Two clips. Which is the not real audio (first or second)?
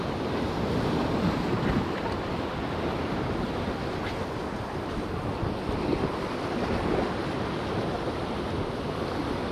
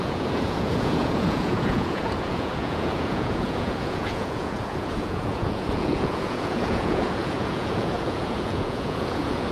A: second